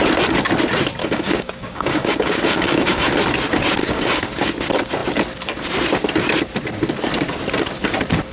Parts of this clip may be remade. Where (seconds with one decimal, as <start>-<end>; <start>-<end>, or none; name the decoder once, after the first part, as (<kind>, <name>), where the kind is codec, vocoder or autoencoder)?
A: 1.0-3.1 (codec, DAC); 3.8-4.5

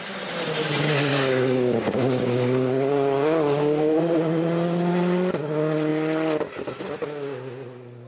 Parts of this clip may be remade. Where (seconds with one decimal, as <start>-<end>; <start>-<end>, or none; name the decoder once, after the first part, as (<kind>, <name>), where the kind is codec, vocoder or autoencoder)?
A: 1.1-4.0 (codec, DAC)

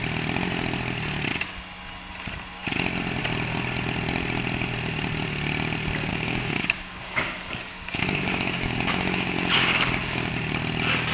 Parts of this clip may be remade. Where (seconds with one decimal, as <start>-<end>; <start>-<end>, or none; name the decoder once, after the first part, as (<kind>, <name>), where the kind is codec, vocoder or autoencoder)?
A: 6.1-10.3 (codec, DAC)

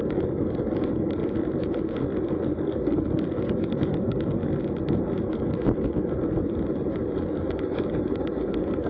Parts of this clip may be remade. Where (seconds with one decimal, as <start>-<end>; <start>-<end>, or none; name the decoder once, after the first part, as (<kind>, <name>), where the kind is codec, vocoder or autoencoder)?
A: 0.0-1.2 (codec, DAC); 2.6-4.4; 5.2-8.9

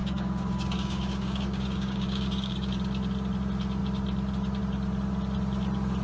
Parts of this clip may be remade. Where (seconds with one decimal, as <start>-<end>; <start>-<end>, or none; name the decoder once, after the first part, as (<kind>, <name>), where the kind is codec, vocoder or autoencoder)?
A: 0.0-2.7 (codec, DAC)